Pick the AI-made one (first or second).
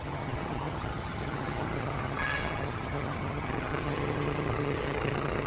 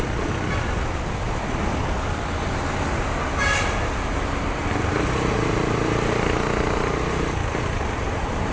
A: first